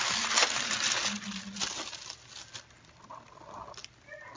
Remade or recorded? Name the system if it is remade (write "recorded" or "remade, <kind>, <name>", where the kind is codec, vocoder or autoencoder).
recorded